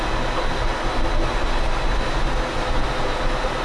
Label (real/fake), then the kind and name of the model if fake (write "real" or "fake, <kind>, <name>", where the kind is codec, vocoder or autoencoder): real